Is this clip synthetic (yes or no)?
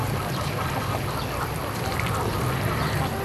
yes